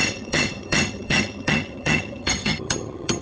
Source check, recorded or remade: remade